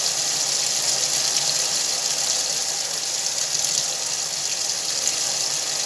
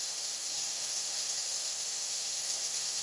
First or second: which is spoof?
second